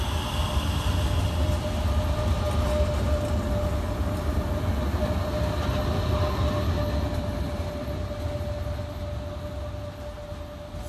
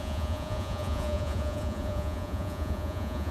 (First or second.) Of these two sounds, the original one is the first